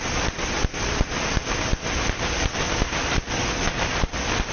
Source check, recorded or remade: recorded